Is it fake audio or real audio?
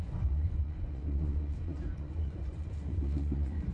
fake